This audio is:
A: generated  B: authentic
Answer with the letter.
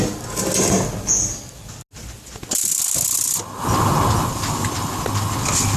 B